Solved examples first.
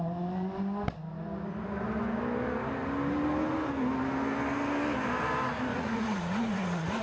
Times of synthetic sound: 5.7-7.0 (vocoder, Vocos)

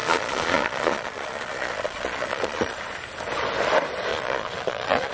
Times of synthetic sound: 0.0-2.8 (vocoder, Vocos); 4.1-5.1

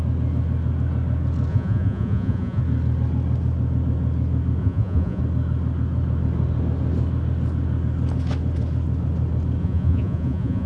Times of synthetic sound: 1.5-2.6 (vocoder, Vocos); 4.6-5.2; 9.6-10.7

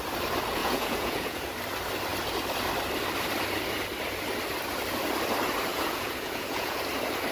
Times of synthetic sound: 0.6-1.4 (vocoder, Vocos); 5.7-6.8

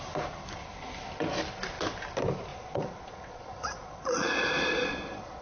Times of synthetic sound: 2.5-5.4 (vocoder, Vocos)

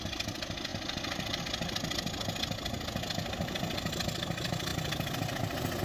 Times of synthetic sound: none

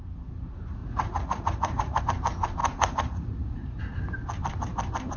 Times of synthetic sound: 0.8-2.0 (vocoder, Vocos); 2.6-3.8

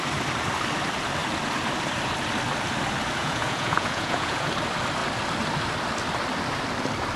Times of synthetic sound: 3.2-4.5 (vocoder, Vocos)